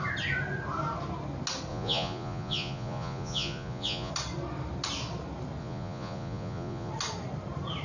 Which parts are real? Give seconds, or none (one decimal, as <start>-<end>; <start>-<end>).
0.0-1.7; 4.1-5.6; 6.9-7.8